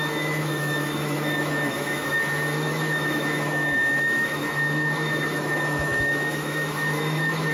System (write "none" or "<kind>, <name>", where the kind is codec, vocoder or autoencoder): autoencoder, DAC-VAE